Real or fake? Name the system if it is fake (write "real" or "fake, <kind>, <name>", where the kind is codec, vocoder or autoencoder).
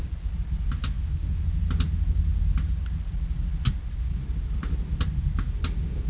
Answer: real